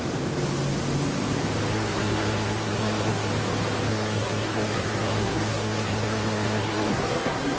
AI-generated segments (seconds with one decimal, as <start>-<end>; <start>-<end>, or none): 1.7-3.3; 3.9-7.6